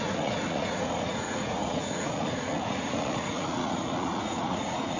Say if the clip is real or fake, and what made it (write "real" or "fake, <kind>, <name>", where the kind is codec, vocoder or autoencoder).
fake, vocoder, Vocos